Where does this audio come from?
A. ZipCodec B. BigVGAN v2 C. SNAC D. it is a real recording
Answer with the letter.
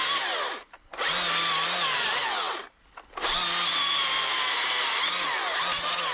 D